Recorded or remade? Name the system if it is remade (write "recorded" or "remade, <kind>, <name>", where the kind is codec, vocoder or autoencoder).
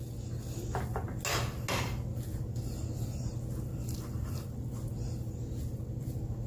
recorded